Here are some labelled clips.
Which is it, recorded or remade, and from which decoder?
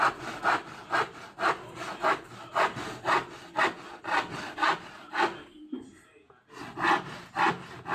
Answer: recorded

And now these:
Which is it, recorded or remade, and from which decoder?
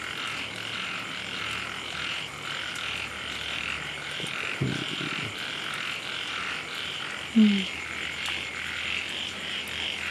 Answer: recorded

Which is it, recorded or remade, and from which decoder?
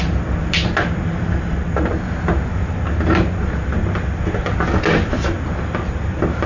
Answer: recorded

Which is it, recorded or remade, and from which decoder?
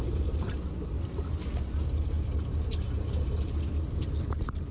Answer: recorded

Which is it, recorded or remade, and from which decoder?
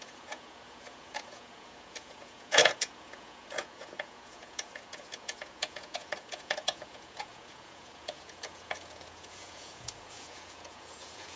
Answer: remade, vocoder, Vocos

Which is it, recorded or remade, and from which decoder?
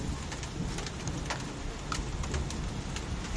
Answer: recorded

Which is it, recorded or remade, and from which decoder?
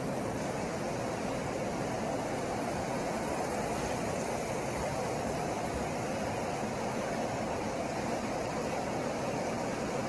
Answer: recorded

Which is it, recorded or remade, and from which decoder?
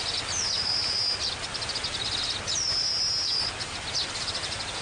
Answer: recorded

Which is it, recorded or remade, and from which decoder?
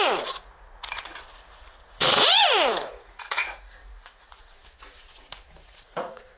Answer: remade, vocoder, Vocos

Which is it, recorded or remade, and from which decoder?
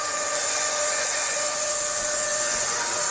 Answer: remade, vocoder, Vocos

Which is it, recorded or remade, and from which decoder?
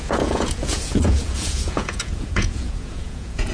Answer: remade, vocoder, Vocos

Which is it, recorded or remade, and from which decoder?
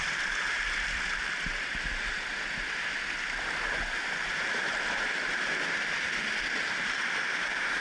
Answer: recorded